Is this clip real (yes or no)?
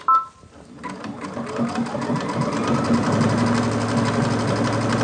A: yes